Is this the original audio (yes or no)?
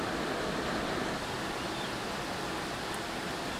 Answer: yes